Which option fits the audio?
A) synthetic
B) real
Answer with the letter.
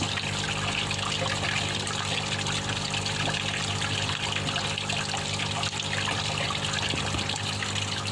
B